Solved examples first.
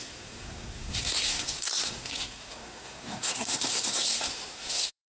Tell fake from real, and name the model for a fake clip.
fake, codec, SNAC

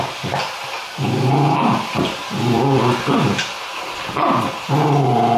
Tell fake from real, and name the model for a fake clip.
real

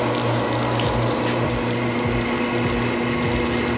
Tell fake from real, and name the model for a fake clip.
real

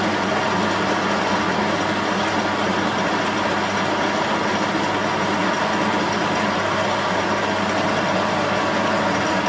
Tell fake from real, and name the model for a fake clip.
real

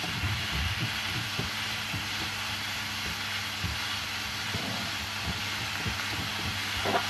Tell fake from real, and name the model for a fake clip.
real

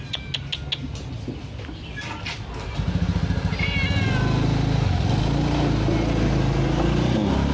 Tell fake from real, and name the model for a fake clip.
real